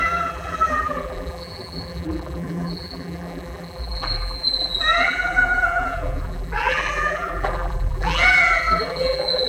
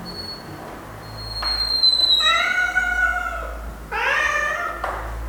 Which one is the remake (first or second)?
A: first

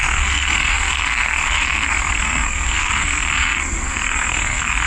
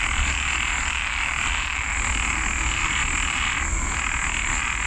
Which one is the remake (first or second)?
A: first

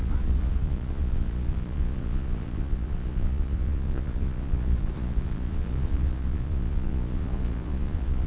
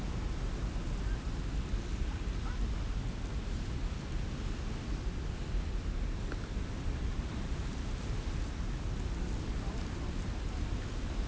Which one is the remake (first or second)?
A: first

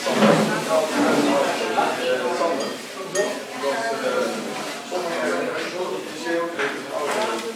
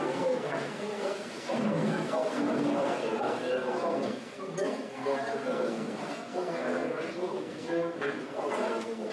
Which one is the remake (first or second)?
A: second